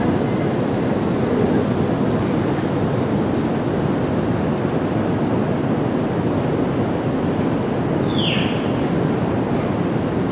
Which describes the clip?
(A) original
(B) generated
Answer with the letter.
A